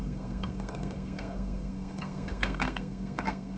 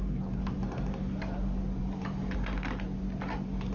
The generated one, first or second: first